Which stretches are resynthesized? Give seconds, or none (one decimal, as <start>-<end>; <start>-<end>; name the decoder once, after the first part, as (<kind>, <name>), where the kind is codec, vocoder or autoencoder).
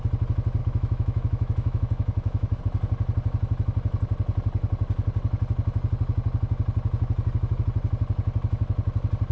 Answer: 0.6-2.6 (autoencoder, DAC-VAE)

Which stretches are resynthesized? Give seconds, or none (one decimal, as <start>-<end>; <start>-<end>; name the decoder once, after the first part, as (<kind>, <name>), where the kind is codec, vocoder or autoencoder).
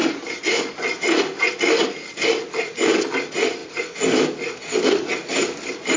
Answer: none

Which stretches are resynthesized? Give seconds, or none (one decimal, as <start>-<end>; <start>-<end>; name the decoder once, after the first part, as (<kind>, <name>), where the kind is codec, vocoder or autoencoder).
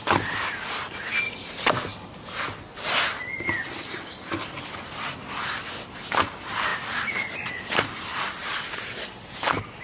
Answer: none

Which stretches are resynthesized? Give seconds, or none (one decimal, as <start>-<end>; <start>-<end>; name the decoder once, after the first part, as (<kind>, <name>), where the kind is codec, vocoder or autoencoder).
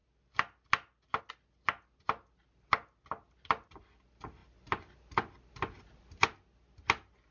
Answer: none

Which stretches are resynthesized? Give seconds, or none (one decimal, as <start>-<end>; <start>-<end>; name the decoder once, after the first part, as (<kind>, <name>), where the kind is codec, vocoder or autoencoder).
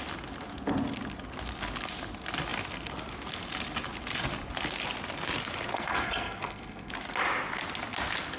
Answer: 5.7-6.9 (codec, SNAC)